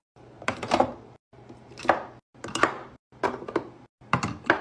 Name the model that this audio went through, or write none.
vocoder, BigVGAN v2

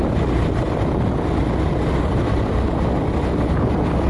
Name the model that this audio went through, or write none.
none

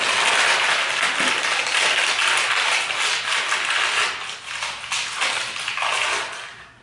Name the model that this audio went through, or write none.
none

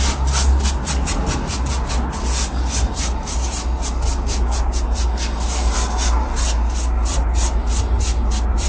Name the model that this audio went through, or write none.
none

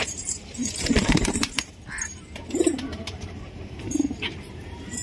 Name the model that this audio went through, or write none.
vocoder, BigVGAN v2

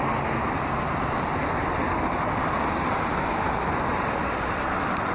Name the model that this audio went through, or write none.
none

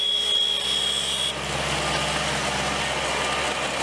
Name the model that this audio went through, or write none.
none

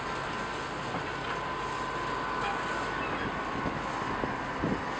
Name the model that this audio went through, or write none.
none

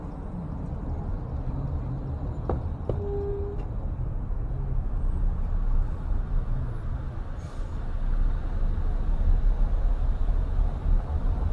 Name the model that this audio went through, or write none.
none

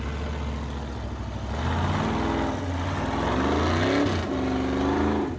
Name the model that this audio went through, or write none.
none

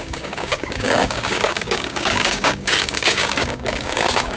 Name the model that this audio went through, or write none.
codec, DAC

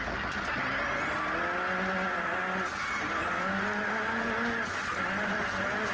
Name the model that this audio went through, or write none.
none